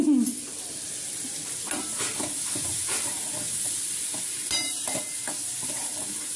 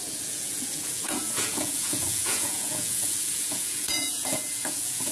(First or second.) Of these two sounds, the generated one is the second